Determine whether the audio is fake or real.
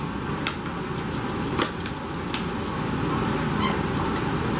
real